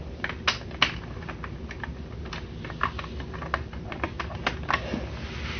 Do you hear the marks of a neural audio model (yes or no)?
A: no